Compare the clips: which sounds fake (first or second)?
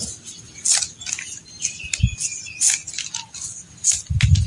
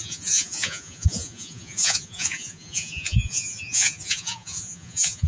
second